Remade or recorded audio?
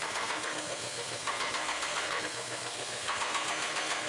remade